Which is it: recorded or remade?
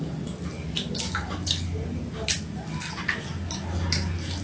recorded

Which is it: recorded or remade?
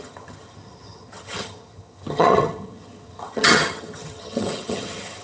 remade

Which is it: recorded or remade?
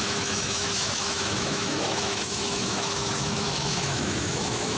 remade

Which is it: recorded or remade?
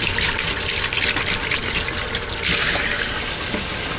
recorded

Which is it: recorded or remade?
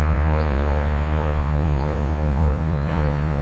remade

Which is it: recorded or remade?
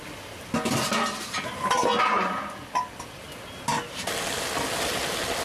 recorded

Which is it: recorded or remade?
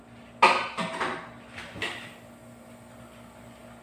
recorded